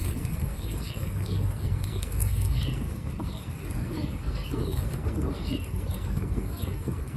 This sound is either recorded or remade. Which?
remade